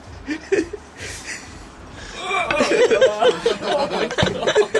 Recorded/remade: remade